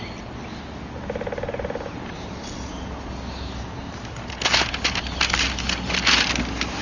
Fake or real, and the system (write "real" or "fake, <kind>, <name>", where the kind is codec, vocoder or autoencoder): real